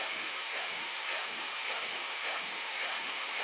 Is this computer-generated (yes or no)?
yes